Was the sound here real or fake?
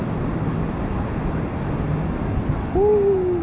real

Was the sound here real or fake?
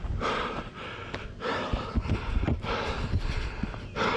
real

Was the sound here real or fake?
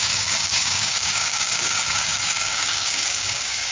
fake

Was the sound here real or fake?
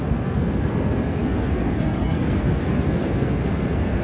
fake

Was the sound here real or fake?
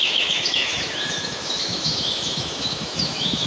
fake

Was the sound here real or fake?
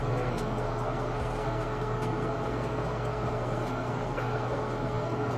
fake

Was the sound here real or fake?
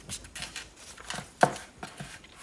real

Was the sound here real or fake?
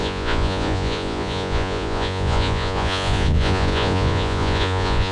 fake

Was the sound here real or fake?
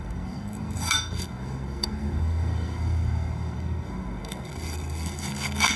fake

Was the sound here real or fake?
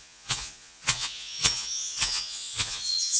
fake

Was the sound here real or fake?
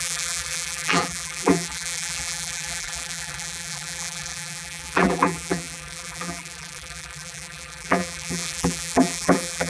fake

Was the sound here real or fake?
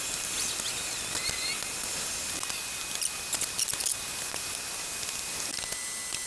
real